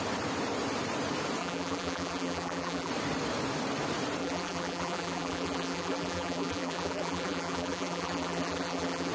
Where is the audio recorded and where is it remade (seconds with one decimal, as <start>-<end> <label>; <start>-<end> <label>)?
0.0-1.4 recorded; 1.4-2.9 remade; 2.9-4.2 recorded; 4.2-9.1 remade